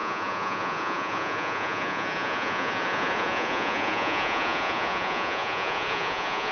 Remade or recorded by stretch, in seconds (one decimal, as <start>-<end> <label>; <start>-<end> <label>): 0.0-6.5 remade